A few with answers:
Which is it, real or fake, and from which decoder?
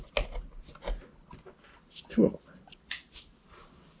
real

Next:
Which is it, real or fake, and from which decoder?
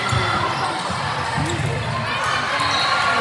real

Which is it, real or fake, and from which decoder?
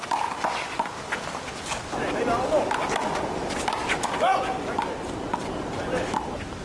real